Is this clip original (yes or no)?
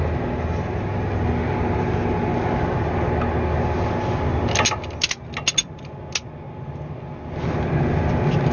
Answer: yes